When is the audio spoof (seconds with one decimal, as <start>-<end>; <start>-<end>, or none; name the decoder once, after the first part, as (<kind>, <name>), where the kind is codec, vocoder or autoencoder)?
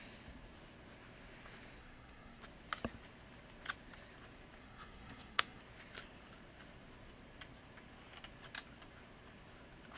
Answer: 1.8-2.4 (codec, SNAC); 4.6-5.6